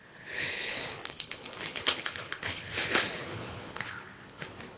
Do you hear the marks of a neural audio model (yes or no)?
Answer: yes